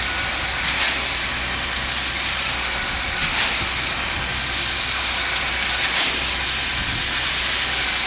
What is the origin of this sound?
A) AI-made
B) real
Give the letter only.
B